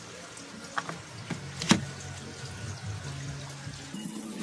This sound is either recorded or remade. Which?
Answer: recorded